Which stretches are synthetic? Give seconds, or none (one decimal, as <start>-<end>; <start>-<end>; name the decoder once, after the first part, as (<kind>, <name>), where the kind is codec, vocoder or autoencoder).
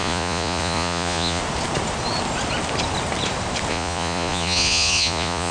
0.0-1.4 (vocoder, Vocos); 3.7-5.5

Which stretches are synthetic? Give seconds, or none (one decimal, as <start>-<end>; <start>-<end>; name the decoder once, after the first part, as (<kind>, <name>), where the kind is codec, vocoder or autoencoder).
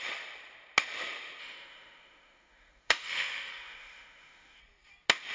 1.4-4.6 (autoencoder, DAC-VAE)